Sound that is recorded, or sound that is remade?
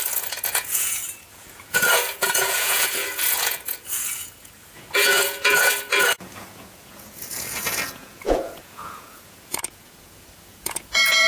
remade